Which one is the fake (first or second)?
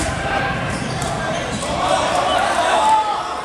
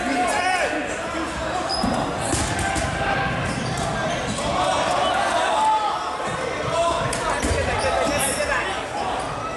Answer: first